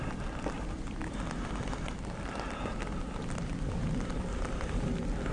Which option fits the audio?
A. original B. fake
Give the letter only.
B